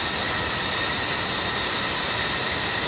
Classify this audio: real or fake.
real